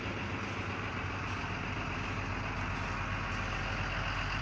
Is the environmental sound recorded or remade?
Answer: recorded